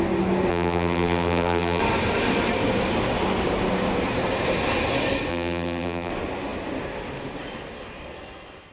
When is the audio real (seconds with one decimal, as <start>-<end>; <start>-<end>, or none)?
0.0-0.5; 1.8-5.3; 6.1-8.7